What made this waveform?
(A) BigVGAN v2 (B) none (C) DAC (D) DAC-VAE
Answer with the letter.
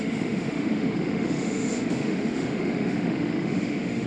D